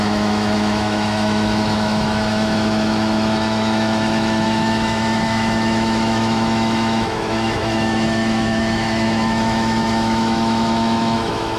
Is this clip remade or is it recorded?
remade